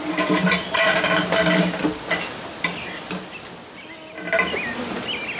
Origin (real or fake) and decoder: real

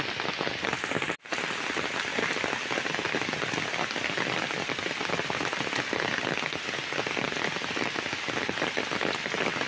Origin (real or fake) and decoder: real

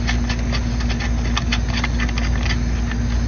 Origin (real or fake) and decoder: real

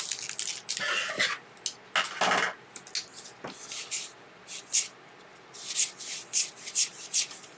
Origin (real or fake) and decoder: real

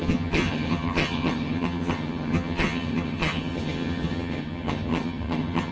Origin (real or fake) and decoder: fake, vocoder, HiFi-GAN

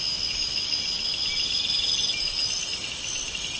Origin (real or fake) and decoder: real